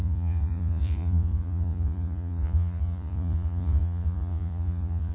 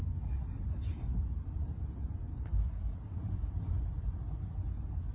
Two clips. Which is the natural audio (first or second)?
second